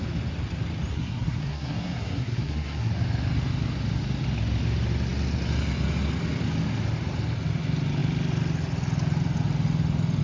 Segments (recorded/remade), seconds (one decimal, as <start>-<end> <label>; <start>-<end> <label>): 0.0-0.9 recorded; 0.9-2.9 remade; 2.9-10.2 recorded